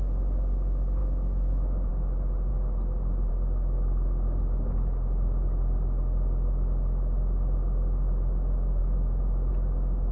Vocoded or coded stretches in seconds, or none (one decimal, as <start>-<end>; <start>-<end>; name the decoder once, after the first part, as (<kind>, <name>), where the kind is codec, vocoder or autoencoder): 1.0-1.9 (autoencoder, DAC-VAE); 8.8-9.5